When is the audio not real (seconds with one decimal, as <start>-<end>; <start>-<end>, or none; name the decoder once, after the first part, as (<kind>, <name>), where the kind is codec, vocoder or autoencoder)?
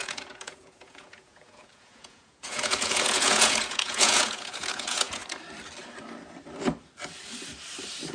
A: 0.0-5.2 (vocoder, Vocos)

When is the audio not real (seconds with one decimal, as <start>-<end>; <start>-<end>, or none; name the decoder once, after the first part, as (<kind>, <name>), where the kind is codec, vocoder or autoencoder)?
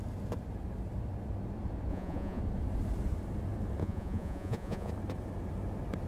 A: 1.9-2.4 (vocoder, Vocos); 3.8-4.9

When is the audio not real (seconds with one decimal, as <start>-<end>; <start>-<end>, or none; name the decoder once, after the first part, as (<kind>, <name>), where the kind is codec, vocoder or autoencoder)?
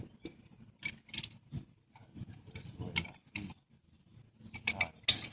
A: none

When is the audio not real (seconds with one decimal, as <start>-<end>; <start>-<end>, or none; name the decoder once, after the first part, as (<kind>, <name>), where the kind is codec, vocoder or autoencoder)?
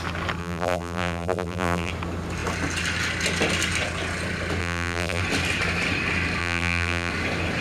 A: 0.4-1.9 (vocoder, BigVGAN v2); 4.6-5.2; 6.4-7.1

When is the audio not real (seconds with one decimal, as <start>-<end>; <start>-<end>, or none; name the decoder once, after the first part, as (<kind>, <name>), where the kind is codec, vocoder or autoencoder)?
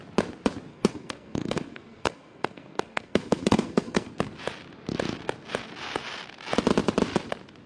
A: 0.7-4.1 (codec, SNAC)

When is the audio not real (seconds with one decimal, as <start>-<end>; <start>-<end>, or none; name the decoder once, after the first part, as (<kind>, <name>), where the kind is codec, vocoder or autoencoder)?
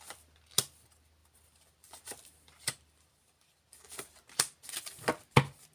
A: 1.2-4.6 (vocoder, BigVGAN v2)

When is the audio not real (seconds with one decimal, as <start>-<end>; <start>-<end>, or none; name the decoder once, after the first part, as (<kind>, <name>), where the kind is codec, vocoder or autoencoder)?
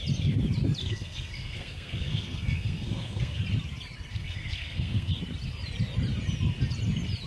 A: 0.8-3.4 (codec, SNAC); 4.1-5.2